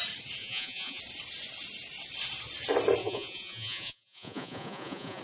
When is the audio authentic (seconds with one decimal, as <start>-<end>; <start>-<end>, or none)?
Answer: 0.0-0.4; 1.0-3.0